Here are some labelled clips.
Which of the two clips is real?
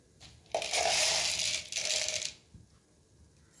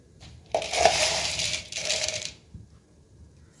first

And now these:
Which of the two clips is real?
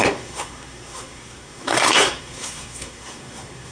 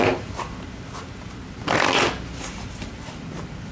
second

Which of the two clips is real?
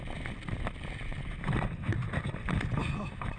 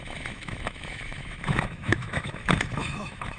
first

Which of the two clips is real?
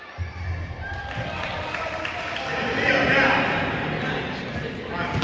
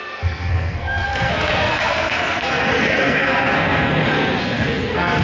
first